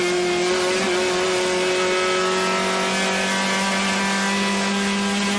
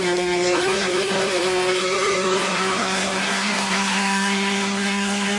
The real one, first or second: first